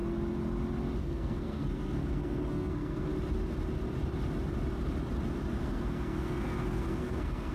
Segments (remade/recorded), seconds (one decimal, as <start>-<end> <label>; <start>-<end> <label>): 0.0-1.0 recorded; 1.0-3.1 remade; 3.1-5.6 recorded; 5.6-7.5 remade